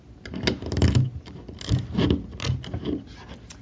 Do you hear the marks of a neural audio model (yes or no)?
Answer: no